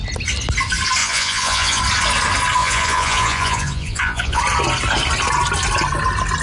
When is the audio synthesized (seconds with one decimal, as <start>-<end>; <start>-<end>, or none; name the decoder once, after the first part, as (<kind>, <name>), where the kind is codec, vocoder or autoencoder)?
1.0-1.8 (vocoder, Vocos); 2.6-4.4